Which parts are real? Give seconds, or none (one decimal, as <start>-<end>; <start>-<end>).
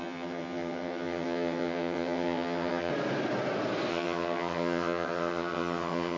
2.9-3.9